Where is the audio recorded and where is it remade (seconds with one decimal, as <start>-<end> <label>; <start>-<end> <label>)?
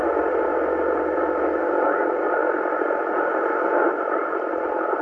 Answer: 0.0-5.0 recorded